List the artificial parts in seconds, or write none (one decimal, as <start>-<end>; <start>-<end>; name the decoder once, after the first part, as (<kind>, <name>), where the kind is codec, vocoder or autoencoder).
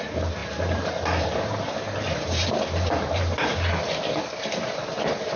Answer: 0.0-3.5 (vocoder, BigVGAN v2); 4.5-5.4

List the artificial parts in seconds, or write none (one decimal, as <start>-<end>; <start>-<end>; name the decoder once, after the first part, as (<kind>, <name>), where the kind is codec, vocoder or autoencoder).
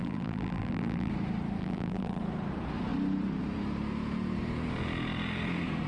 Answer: 0.0-1.1 (vocoder, BigVGAN v2); 1.6-2.2